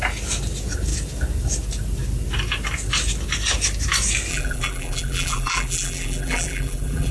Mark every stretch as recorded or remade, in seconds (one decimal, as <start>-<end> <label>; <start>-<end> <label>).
0.0-4.3 recorded; 4.3-7.1 remade